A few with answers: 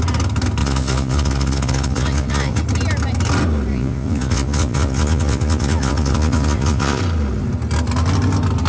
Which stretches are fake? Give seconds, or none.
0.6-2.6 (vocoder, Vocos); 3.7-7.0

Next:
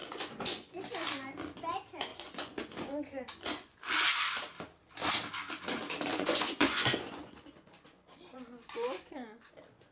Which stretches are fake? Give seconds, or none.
0.0-0.8 (vocoder, Vocos); 2.1-3.8; 6.1-9.5

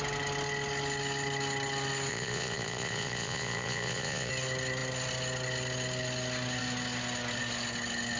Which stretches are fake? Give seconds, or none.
2.1-4.3 (vocoder, Vocos)

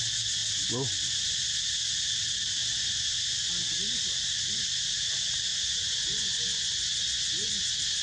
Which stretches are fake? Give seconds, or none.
2.6-3.5 (vocoder, Vocos); 5.5-7.5

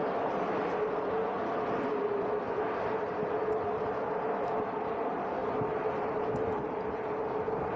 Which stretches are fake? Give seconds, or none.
none

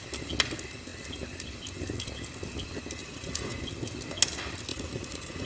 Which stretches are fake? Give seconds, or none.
3.0-3.6 (vocoder, Vocos); 4.7-5.5

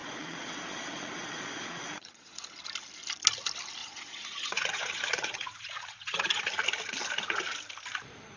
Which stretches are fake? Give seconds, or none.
0.0-2.4 (vocoder, Vocos); 3.8-6.4